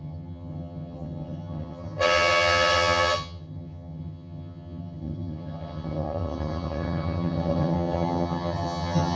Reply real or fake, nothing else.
fake